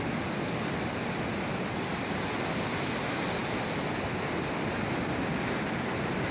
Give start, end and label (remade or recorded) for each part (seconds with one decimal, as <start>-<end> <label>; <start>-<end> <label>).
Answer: 0.0-6.3 recorded